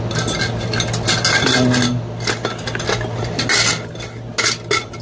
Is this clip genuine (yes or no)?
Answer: yes